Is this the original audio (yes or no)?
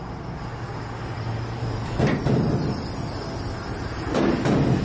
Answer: yes